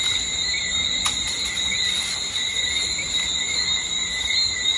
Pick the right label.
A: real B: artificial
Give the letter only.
A